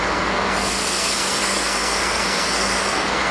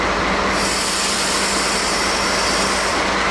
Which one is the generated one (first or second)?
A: first